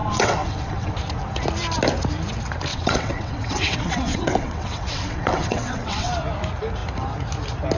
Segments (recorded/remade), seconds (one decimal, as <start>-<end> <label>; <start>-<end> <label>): 0.0-0.9 remade; 0.9-2.7 recorded; 2.7-6.1 remade; 6.1-7.8 recorded

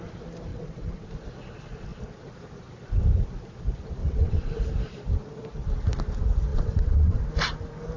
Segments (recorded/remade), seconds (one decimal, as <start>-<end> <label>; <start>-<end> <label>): 0.0-0.5 recorded; 0.5-1.1 remade; 1.1-4.0 recorded; 4.0-4.6 remade; 4.6-6.5 recorded; 6.5-7.2 remade; 7.2-8.0 recorded

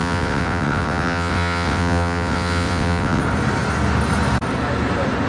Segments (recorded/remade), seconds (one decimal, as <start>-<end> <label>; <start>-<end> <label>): 0.0-3.2 remade; 3.2-5.3 recorded

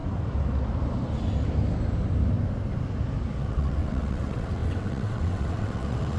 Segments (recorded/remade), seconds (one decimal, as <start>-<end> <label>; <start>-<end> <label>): 0.0-3.4 recorded; 3.4-6.2 remade

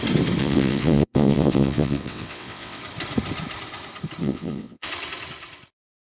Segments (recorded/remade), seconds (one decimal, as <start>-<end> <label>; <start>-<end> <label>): 0.0-0.4 recorded; 0.4-2.8 remade; 2.8-4.2 recorded; 4.2-4.9 remade; 4.9-6.1 recorded

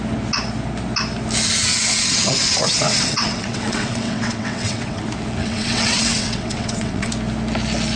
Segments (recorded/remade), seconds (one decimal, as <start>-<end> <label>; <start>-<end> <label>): 0.0-1.7 recorded; 1.7-5.0 remade; 5.0-5.4 recorded; 5.4-7.1 remade; 7.1-8.0 recorded

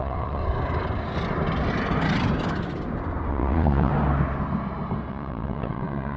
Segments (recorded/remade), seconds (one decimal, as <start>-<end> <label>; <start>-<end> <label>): 0.0-0.4 remade; 0.4-3.3 recorded; 3.3-3.9 remade; 3.9-5.1 recorded; 5.1-6.2 remade